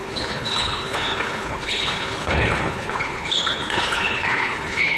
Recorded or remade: remade